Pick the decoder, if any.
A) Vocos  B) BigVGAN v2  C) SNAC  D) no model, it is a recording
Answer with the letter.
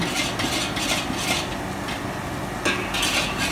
D